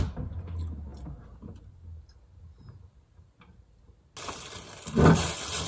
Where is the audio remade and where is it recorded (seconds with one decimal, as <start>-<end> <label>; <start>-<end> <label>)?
0.0-5.7 recorded